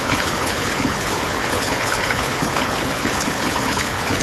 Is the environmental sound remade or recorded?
remade